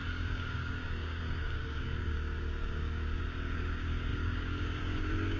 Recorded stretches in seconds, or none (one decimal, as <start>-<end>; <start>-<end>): none